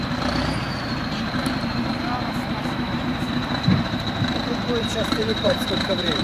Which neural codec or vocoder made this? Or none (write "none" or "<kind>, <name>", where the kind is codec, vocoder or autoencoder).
vocoder, BigVGAN v2